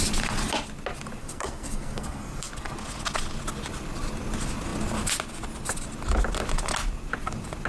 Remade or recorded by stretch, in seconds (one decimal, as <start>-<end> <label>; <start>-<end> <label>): 0.0-1.2 recorded; 1.2-2.5 remade; 2.5-7.7 recorded